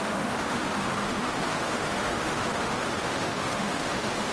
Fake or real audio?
fake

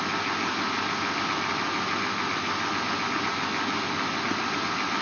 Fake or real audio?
real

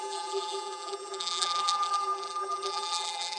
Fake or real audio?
fake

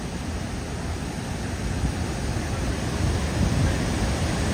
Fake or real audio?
real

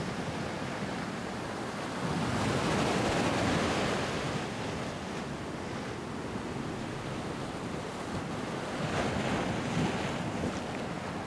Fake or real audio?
real